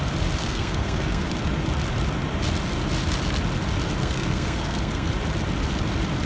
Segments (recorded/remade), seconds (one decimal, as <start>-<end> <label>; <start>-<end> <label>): 0.0-0.4 recorded; 0.4-1.3 remade; 1.3-4.0 recorded; 4.0-5.1 remade; 5.1-6.3 recorded